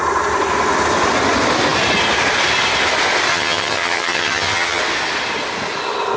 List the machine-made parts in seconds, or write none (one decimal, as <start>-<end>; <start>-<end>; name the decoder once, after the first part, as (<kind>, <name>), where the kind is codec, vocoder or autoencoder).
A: 3.3-4.8 (vocoder, HiFi-GAN)